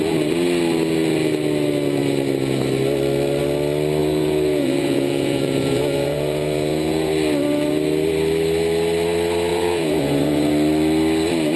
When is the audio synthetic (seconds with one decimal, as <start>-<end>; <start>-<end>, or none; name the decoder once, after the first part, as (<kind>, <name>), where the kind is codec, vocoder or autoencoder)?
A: 4.0-7.1 (vocoder, Vocos); 9.5-10.5